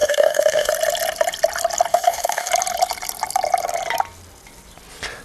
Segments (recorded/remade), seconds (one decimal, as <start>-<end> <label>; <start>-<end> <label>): 0.0-0.7 remade; 0.7-1.9 recorded; 1.9-2.5 remade; 2.5-5.2 recorded